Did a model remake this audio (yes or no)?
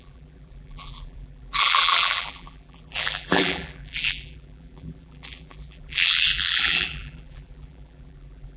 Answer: yes